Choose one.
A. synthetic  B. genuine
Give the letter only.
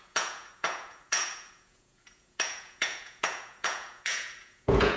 A